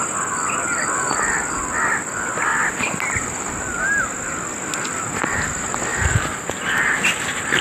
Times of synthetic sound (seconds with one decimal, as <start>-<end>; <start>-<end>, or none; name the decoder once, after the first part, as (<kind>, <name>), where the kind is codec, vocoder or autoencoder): 2.5-3.8 (vocoder, BigVGAN v2); 5.9-6.5